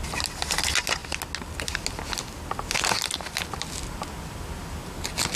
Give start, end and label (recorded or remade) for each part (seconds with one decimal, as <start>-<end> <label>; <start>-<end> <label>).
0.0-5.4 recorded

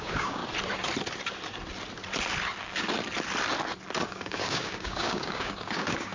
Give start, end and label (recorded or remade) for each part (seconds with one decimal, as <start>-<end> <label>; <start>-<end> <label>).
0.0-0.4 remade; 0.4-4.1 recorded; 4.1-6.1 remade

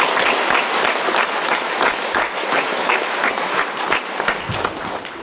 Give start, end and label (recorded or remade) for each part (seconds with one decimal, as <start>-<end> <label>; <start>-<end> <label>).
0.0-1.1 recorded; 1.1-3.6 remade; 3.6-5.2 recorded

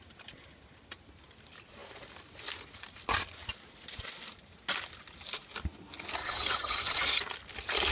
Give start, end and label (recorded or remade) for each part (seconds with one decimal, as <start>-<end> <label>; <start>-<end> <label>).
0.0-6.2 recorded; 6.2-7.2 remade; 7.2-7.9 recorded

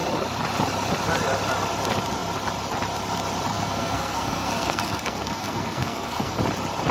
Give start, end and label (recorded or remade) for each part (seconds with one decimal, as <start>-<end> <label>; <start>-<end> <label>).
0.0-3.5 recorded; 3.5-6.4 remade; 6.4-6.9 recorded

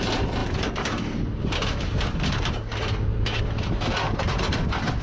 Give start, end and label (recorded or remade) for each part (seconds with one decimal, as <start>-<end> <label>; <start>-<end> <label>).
0.0-0.4 recorded; 0.4-3.4 remade; 3.4-5.0 recorded

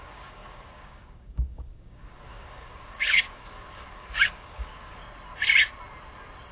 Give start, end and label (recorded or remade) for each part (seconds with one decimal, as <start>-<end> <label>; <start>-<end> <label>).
0.0-5.0 remade; 5.0-6.5 recorded

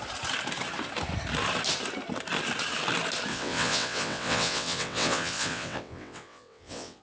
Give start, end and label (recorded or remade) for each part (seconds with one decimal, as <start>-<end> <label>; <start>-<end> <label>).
0.0-3.3 recorded; 3.3-7.0 remade